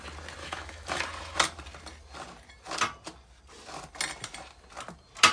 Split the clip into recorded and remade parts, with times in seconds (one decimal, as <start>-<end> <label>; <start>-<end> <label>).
0.0-0.4 recorded; 0.4-1.0 remade; 1.0-5.3 recorded